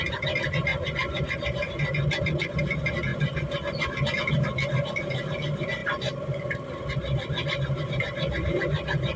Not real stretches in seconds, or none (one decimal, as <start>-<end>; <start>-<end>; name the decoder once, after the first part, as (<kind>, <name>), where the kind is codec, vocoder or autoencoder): none